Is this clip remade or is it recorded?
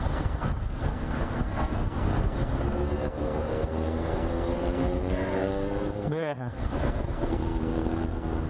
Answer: remade